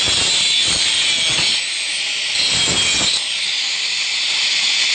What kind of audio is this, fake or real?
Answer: real